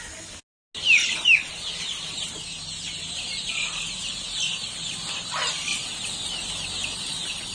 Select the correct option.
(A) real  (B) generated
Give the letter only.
A